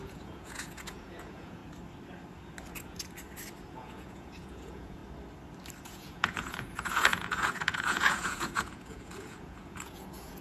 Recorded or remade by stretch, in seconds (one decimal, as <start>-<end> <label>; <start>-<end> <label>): 0.0-1.6 remade; 1.6-3.7 recorded; 3.7-5.0 remade; 5.0-5.8 recorded; 5.8-10.4 remade